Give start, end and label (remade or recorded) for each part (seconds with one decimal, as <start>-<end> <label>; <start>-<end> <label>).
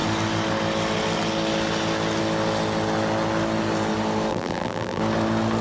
0.0-4.3 recorded; 4.3-5.0 remade; 5.0-5.6 recorded